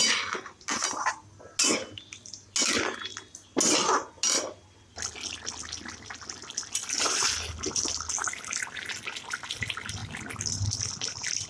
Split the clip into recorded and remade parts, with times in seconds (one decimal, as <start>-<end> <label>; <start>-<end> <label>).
0.0-11.5 recorded